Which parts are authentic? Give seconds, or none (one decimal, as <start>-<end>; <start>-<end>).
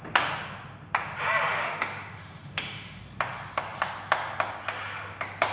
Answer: 0.0-1.6; 3.0-5.5